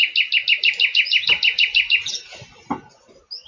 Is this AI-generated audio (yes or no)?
no